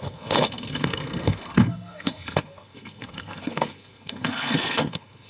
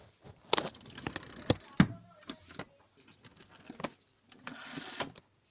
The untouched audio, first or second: second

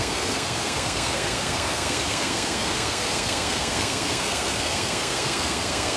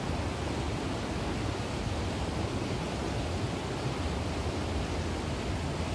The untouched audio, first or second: second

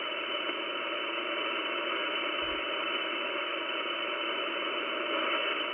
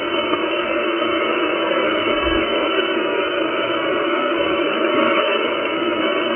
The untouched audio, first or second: first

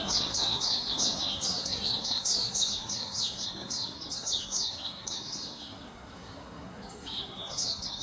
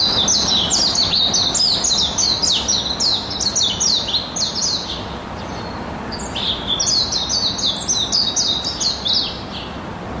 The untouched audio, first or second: second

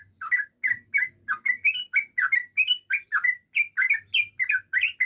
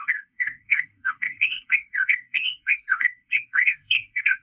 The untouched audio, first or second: first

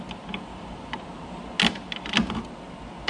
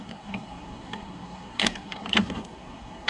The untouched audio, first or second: first